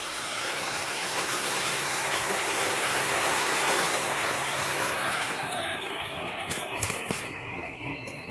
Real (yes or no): no